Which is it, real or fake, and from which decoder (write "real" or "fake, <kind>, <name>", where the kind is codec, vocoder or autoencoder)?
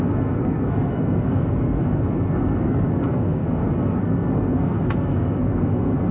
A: fake, codec, SNAC